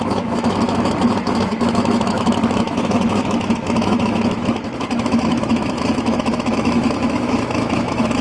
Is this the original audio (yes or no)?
no